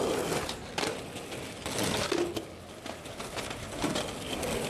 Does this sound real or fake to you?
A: real